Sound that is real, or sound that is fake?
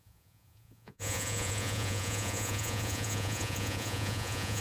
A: fake